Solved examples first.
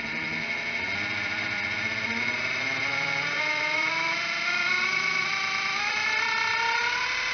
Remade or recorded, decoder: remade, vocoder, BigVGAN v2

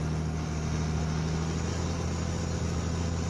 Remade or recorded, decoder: recorded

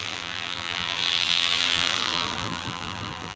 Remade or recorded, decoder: remade, vocoder, BigVGAN v2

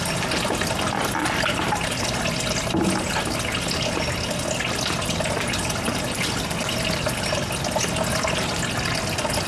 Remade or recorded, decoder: recorded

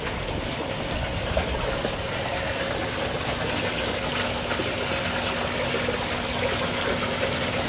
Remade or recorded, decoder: recorded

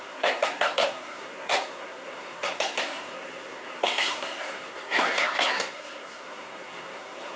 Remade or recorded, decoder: remade, codec, SNAC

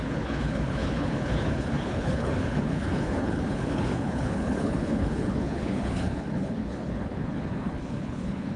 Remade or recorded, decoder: remade, codec, HILCodec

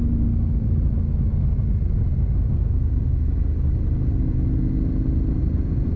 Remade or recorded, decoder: recorded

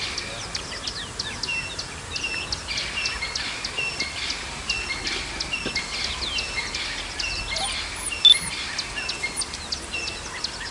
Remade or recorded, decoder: recorded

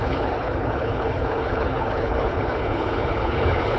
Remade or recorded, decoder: remade, codec, HILCodec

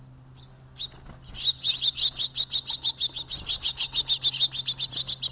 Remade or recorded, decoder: recorded